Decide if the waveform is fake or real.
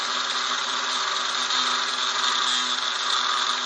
real